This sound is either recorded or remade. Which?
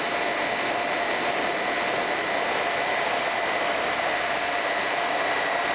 recorded